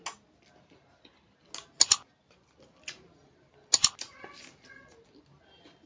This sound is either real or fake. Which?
real